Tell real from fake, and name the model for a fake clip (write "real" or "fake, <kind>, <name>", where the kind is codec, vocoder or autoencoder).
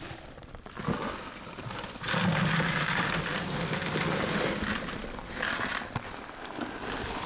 real